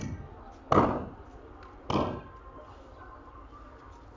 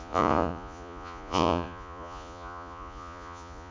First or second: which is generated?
second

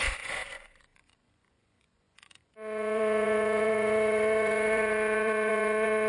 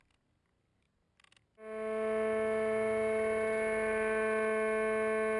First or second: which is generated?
first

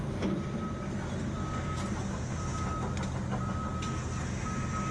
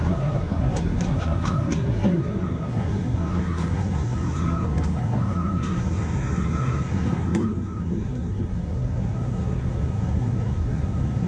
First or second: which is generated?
second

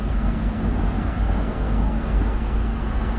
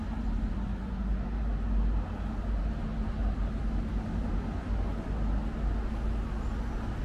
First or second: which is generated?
first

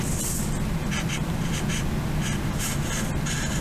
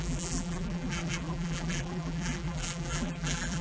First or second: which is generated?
second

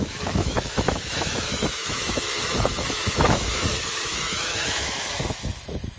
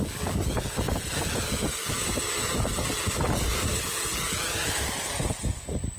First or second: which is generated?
first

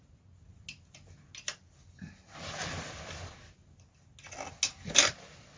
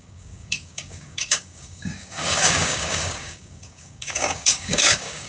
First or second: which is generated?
second